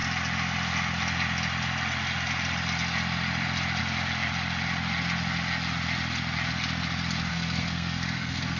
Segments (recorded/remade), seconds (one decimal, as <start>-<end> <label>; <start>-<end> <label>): 0.0-7.3 recorded; 7.3-8.6 remade